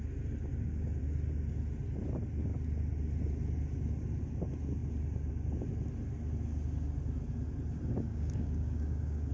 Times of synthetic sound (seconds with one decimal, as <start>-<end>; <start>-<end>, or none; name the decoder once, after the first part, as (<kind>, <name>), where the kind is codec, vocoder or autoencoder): 0.5-1.0 (codec, DAC); 8.1-9.3